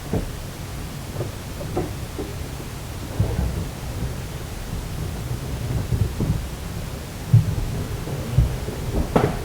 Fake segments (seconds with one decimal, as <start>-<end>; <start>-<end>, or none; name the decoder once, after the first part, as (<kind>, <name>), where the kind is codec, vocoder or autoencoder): none